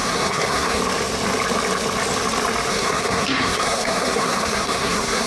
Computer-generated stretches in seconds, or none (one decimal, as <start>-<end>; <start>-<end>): 0.0-0.8; 2.7-5.3